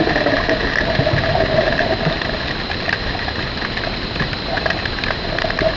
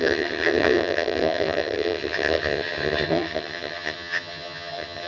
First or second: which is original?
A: first